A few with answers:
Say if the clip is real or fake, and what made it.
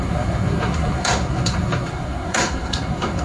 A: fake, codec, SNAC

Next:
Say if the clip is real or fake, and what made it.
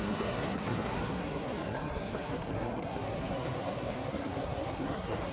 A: fake, codec, SNAC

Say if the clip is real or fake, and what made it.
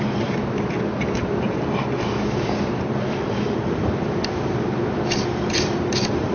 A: fake, vocoder, BigVGAN v2